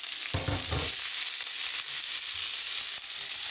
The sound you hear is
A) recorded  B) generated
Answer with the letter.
A